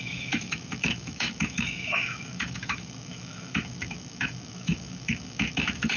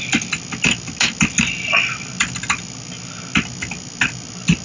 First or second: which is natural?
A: second